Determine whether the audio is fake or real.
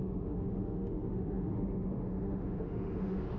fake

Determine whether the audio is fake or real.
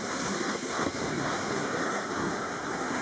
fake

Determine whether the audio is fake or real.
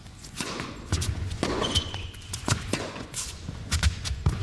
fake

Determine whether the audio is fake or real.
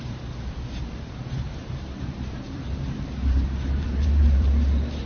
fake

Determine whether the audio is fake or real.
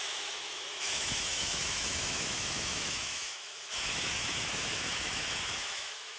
fake